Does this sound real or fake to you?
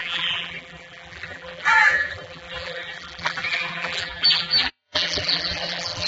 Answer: fake